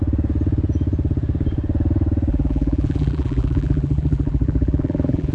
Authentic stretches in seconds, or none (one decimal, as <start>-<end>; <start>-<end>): 0.0-2.3